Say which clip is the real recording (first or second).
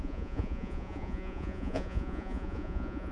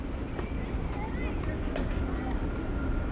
second